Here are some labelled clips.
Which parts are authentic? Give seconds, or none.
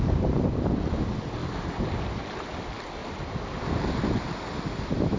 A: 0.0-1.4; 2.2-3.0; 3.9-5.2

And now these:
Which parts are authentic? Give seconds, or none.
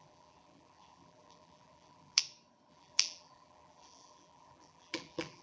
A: 2.2-2.7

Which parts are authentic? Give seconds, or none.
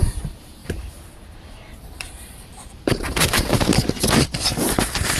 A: 0.0-0.6; 3.7-5.2